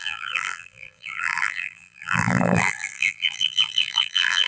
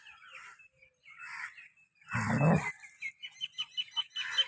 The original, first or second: second